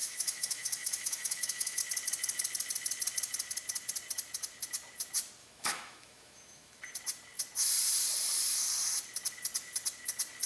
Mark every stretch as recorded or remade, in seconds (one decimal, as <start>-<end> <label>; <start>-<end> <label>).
0.0-1.8 remade; 1.8-5.4 recorded; 5.4-6.8 remade; 6.8-10.5 recorded